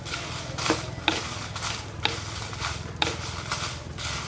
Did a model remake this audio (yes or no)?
no